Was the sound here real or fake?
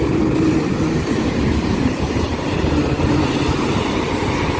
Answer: fake